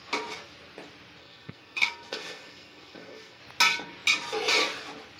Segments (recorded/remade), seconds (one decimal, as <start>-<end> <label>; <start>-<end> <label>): 0.0-1.2 recorded; 1.2-3.4 remade; 3.4-5.2 recorded